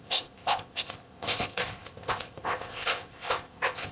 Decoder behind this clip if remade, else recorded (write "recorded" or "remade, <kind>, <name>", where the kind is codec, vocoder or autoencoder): remade, codec, ZipCodec